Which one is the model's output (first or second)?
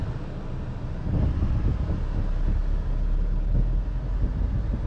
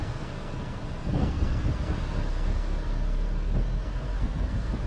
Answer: second